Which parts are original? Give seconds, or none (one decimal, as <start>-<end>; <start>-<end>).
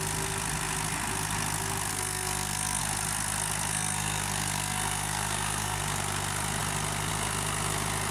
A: 0.0-1.9; 2.8-3.7; 5.8-8.1